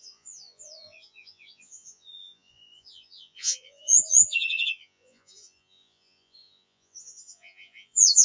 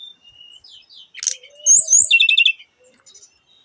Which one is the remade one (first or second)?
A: first